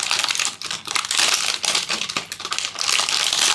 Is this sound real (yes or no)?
yes